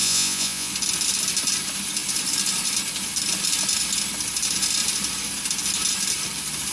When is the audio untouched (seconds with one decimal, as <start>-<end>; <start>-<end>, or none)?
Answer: 0.7-6.7